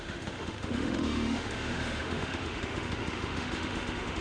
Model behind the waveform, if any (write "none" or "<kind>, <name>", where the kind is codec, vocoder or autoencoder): autoencoder, DAC-VAE